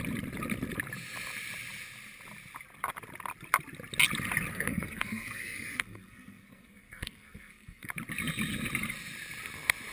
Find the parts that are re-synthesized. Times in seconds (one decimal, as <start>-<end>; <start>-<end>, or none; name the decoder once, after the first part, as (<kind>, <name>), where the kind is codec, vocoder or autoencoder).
4.5-7.9 (codec, SNAC)